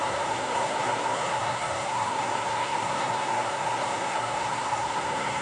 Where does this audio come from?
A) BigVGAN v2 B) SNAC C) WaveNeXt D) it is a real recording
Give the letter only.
B